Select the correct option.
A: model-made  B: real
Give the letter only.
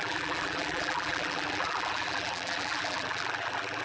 A